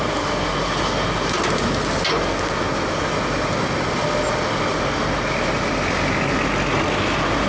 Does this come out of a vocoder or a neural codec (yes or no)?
no